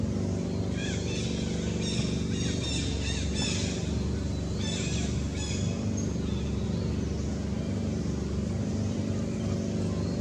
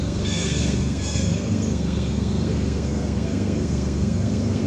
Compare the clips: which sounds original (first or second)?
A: first